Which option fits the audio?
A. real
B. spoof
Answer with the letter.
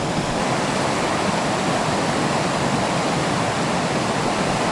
B